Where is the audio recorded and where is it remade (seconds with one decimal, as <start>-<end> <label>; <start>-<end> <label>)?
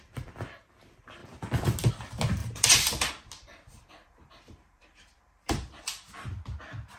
0.0-2.4 recorded; 2.4-3.1 remade; 3.1-4.0 recorded; 4.0-5.8 remade; 5.8-7.0 recorded